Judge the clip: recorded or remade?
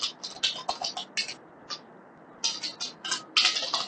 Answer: recorded